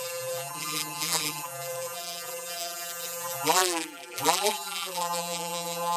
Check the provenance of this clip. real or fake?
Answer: fake